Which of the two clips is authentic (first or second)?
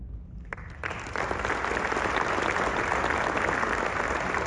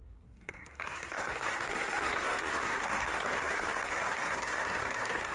first